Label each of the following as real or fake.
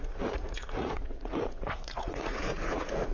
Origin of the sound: fake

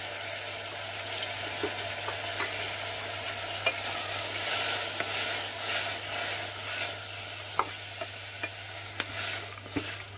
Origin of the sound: real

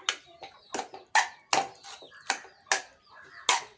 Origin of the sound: real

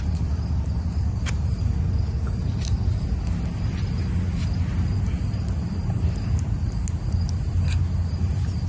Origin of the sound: real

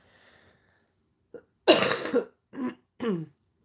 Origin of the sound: real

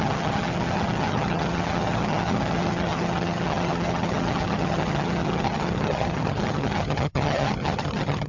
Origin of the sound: fake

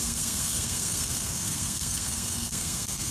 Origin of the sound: fake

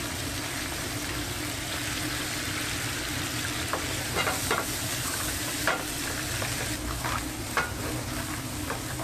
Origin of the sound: real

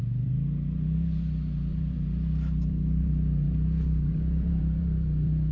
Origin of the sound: fake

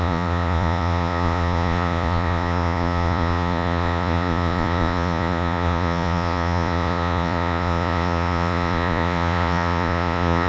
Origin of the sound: fake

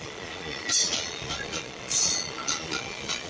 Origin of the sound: fake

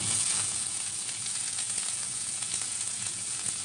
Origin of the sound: fake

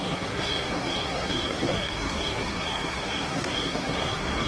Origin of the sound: fake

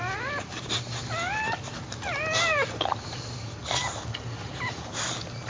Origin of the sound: real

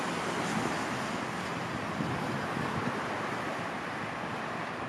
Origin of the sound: real